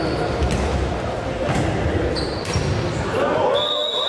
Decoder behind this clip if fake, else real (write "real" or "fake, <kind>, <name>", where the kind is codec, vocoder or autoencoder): real